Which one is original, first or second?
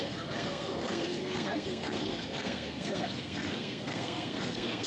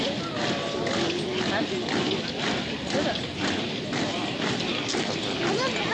second